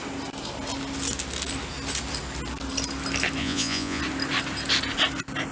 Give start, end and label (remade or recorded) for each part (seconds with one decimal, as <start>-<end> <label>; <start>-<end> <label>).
0.0-3.4 recorded; 3.4-4.0 remade; 4.0-5.5 recorded